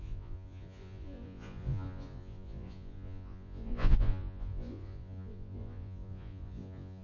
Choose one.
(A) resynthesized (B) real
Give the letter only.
A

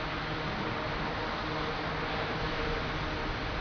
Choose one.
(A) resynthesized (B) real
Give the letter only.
B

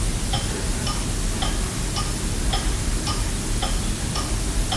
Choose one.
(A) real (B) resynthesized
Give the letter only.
A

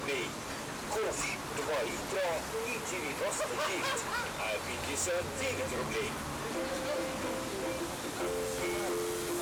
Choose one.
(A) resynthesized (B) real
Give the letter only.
B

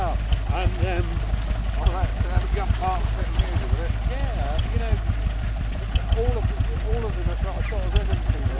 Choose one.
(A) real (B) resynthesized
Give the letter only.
A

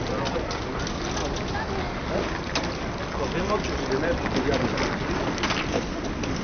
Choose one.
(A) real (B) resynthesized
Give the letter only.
A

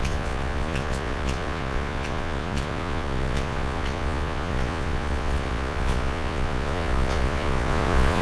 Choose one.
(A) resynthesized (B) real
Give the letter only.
A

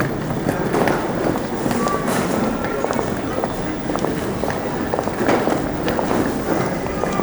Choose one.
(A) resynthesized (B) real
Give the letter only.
B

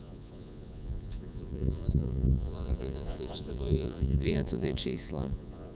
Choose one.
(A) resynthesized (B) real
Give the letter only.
A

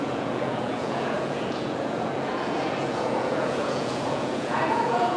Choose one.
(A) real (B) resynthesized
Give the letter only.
B